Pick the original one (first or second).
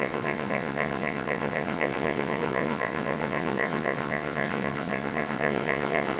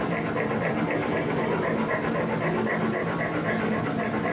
second